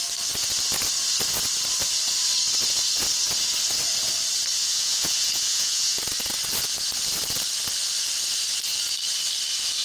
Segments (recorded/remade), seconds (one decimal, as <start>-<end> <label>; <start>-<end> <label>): 0.0-4.6 recorded; 4.6-6.0 remade; 6.0-9.8 recorded

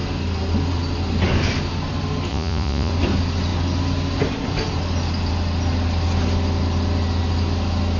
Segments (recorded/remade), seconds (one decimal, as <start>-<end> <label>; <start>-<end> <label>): 0.0-2.3 recorded; 2.3-2.9 remade; 2.9-8.0 recorded

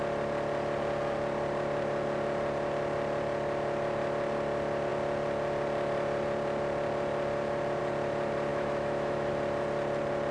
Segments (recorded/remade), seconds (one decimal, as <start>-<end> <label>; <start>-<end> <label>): 0.0-8.5 recorded; 8.5-9.3 remade; 9.3-10.3 recorded

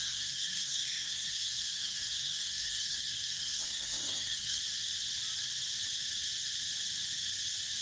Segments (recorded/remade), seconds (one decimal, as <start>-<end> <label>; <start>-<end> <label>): 0.0-4.6 remade; 4.6-7.8 recorded